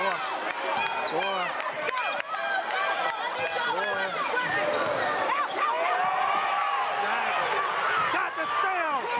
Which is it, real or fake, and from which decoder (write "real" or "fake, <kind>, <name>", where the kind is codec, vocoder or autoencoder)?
real